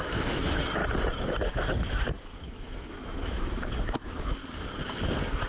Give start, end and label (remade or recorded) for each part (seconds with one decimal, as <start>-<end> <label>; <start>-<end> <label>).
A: 0.0-0.8 remade; 0.8-1.5 recorded; 1.5-4.4 remade; 4.4-5.5 recorded